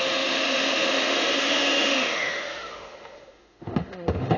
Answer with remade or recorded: remade